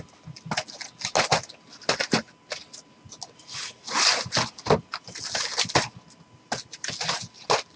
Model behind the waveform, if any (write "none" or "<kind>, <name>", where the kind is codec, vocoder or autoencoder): none